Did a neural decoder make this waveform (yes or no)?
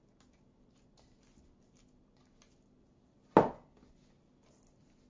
no